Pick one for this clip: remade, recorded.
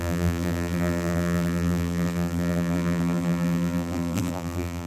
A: remade